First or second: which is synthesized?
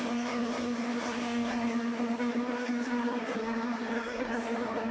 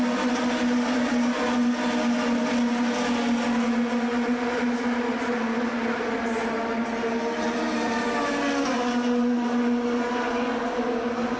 first